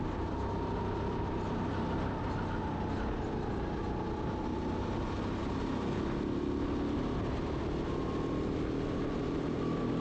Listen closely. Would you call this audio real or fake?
real